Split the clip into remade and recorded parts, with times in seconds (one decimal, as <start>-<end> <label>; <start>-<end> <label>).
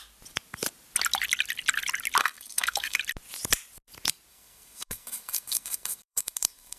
0.0-2.2 recorded; 2.2-3.0 remade; 3.0-4.3 recorded; 4.3-6.8 remade